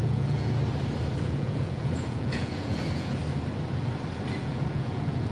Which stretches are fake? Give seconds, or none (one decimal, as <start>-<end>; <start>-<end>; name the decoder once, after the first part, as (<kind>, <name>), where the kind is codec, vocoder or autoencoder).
0.0-0.6 (vocoder, Vocos); 1.2-3.2; 4.4-5.3